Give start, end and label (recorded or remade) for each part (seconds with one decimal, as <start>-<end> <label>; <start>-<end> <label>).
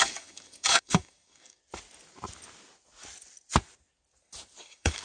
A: 0.0-1.6 remade; 1.6-4.6 recorded; 4.6-5.0 remade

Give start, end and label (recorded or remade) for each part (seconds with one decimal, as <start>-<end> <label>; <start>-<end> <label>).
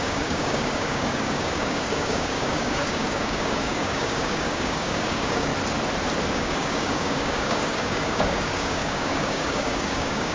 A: 0.0-5.5 remade; 5.5-6.3 recorded; 6.3-10.3 remade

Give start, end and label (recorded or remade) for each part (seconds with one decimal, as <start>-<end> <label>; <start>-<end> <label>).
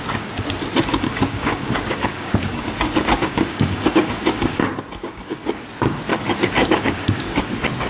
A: 0.0-0.9 recorded; 0.9-5.6 remade; 5.6-6.1 recorded; 6.1-7.4 remade; 7.4-7.9 recorded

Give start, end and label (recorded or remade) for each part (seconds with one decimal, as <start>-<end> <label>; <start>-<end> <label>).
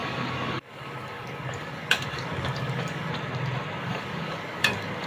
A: 0.0-3.1 remade; 3.1-3.8 recorded; 3.8-5.1 remade